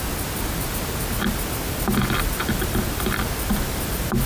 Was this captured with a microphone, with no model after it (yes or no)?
yes